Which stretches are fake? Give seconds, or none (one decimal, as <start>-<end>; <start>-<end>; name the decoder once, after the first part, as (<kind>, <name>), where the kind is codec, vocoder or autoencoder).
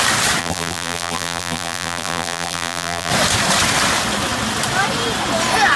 0.4-3.1 (vocoder, BigVGAN v2)